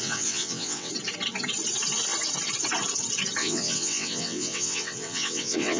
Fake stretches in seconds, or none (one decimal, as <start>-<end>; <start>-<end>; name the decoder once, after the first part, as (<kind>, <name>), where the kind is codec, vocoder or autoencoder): 0.0-0.9 (vocoder, WaveNeXt); 3.4-5.8